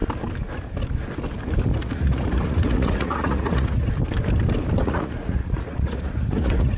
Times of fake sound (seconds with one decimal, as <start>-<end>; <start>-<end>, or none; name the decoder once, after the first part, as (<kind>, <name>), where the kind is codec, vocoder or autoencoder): 1.8-3.9 (vocoder, Vocos); 4.8-6.8